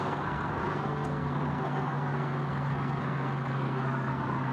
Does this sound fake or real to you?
fake